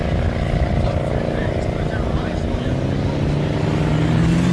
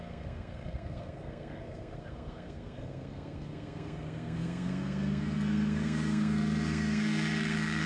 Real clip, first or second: first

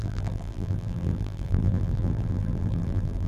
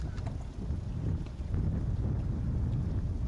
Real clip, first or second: second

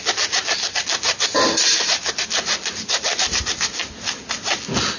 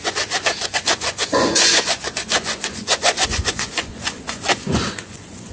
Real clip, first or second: first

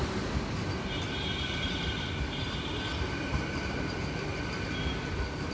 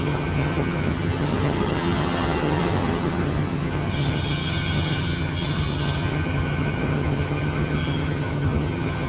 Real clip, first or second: first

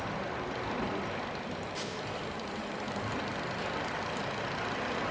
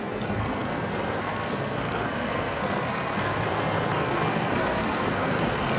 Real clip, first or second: first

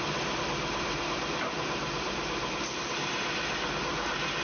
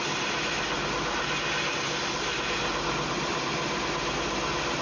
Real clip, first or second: second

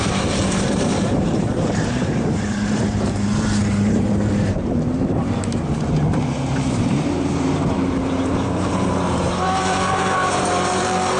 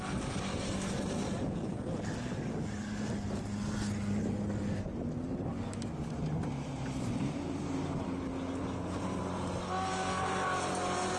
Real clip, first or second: second